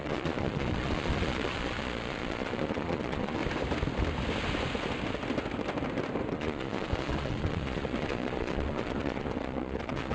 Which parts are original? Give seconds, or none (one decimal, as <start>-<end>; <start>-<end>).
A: 3.4-6.3

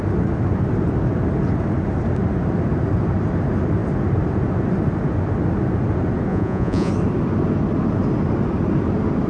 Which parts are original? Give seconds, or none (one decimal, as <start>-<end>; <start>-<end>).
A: 0.0-6.3; 6.9-9.3

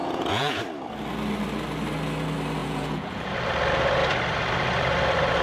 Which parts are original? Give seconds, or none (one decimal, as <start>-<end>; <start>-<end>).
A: 0.6-2.6; 3.3-5.4

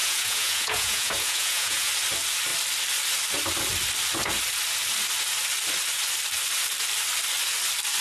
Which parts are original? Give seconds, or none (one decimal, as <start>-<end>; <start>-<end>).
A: 1.9-8.0

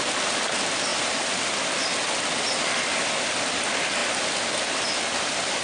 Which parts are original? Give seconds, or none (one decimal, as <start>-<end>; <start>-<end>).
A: 0.0-5.6

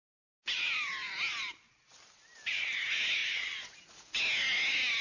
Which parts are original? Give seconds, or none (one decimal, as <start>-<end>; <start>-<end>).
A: 0.0-3.2; 4.1-5.0

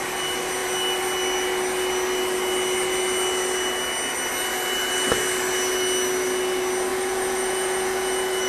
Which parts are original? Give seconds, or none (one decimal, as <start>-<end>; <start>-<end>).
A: 0.0-6.9